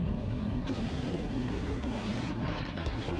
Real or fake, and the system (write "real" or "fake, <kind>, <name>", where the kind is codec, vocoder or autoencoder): fake, codec, SNAC